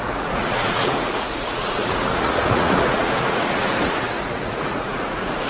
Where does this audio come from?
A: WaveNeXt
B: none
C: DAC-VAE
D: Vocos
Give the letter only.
D